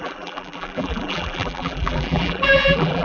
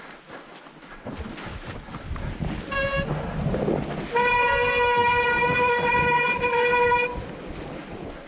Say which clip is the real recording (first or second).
second